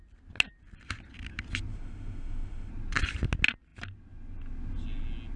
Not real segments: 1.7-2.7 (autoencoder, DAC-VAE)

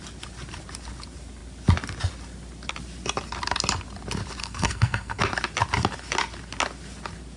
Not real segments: 4.4-5.2 (codec, SNAC)